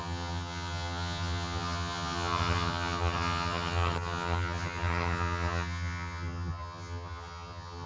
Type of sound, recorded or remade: remade